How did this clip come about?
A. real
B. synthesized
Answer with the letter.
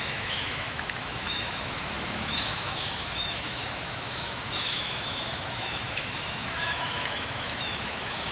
B